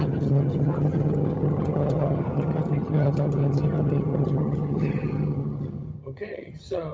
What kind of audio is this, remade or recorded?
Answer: remade